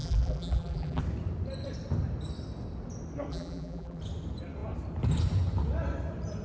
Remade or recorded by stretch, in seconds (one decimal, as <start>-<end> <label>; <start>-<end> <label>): 0.0-1.0 remade; 1.0-3.3 recorded; 3.3-4.0 remade; 4.0-6.4 recorded